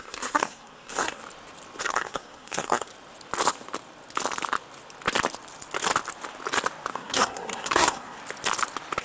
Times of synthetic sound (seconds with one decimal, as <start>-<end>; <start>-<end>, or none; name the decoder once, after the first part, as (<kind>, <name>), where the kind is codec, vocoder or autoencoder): 0.0-1.2 (codec, SNAC); 1.8-2.9; 6.9-8.2